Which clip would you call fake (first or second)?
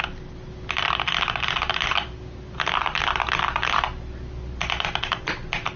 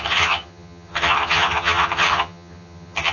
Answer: second